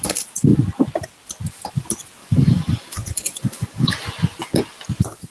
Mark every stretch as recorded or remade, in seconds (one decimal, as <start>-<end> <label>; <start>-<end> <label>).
0.0-2.2 recorded; 2.2-3.9 remade; 3.9-5.3 recorded